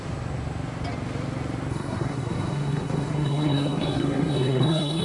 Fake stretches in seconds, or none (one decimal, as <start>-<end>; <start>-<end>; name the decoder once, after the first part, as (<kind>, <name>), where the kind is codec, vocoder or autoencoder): 1.7-5.0 (codec, SNAC)